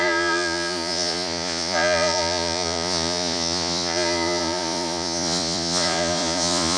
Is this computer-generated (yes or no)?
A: yes